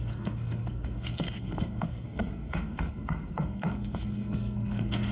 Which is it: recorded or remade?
remade